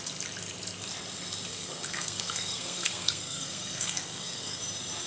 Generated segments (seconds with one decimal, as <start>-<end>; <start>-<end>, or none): 1.5-4.6